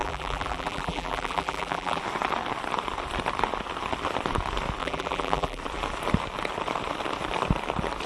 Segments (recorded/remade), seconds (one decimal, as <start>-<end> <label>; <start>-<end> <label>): 0.0-2.0 remade; 2.0-4.8 recorded; 4.8-5.6 remade; 5.6-8.1 recorded